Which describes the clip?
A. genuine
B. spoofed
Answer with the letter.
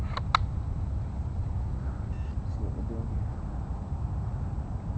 A